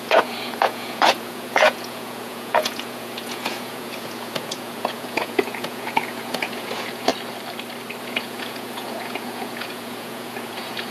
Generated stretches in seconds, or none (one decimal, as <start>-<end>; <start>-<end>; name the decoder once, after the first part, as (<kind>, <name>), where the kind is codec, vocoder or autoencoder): 0.0-7.1 (vocoder, Vocos); 8.0-10.9